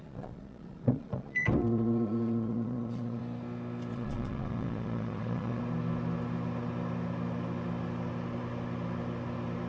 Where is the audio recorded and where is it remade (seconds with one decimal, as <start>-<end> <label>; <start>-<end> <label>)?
0.0-3.2 remade; 3.2-3.9 recorded; 3.9-5.6 remade; 5.6-9.7 recorded